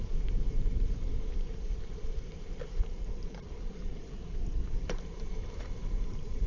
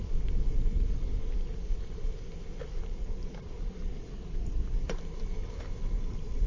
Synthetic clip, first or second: first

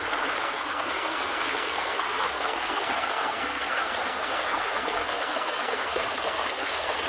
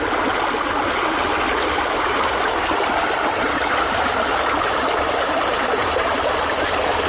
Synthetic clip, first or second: first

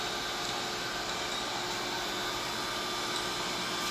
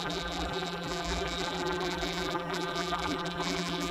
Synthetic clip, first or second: second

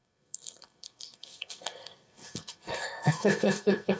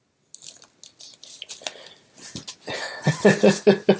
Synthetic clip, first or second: first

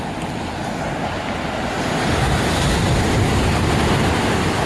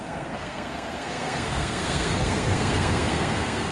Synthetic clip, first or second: second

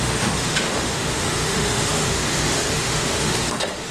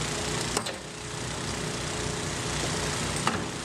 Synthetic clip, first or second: first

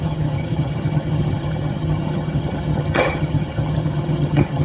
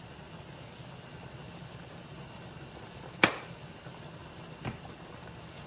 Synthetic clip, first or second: first